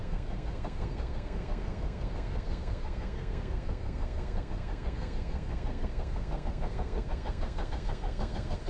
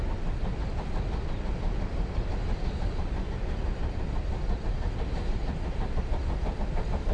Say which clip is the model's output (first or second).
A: first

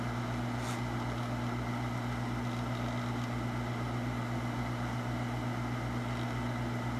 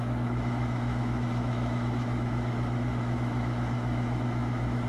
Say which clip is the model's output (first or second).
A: second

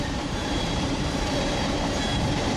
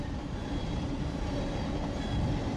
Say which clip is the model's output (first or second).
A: first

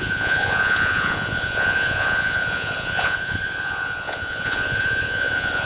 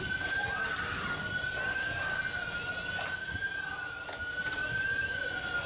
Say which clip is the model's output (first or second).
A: first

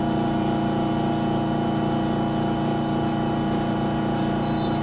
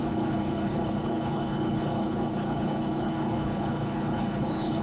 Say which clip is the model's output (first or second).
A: second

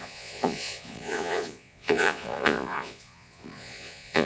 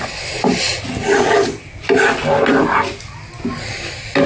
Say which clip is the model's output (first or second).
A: first